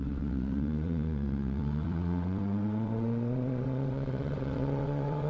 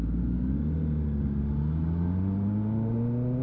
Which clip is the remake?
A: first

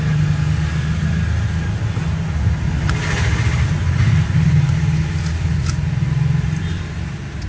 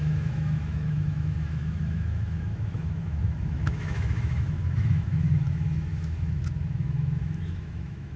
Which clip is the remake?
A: second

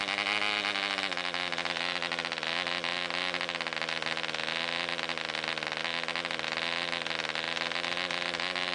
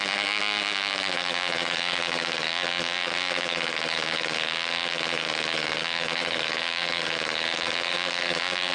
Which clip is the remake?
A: second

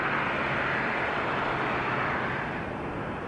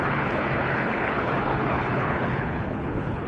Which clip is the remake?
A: second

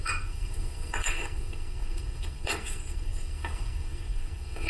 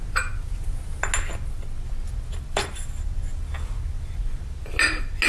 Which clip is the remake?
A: first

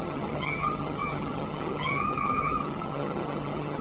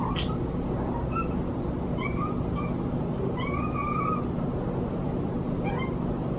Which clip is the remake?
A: first